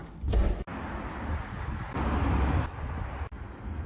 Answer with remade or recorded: recorded